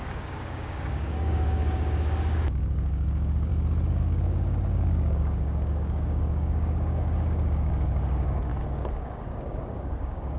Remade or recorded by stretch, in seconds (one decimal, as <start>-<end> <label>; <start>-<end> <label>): 0.0-3.5 remade; 3.5-4.0 recorded; 4.0-8.5 remade; 8.5-9.0 recorded; 9.0-10.4 remade